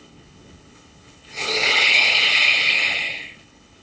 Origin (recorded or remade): remade